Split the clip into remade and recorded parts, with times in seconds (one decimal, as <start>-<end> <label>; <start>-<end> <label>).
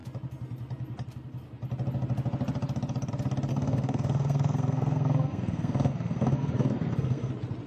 0.0-3.5 recorded; 3.5-7.3 remade; 7.3-7.7 recorded